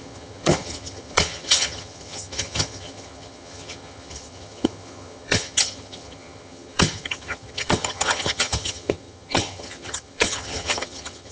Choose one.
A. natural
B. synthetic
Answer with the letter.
B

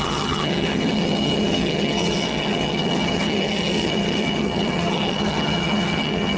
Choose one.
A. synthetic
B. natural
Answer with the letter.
A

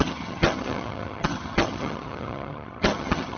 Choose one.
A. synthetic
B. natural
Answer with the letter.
A